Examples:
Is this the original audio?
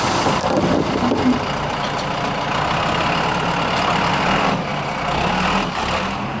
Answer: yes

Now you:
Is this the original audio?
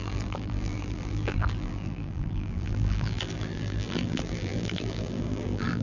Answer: no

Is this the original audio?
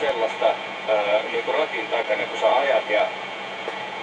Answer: no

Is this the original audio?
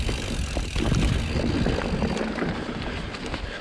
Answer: yes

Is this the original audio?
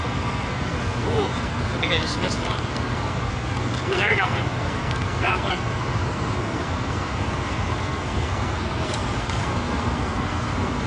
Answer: no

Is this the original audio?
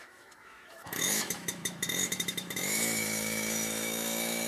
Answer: no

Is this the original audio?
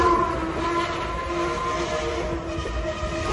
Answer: yes